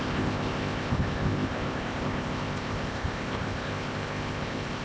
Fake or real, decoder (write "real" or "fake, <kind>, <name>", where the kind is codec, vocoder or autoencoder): fake, codec, ZipCodec